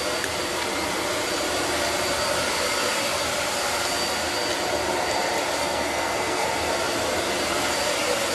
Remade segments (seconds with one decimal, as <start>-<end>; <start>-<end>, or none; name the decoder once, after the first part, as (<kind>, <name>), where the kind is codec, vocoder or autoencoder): 5.6-6.5 (codec, SNAC)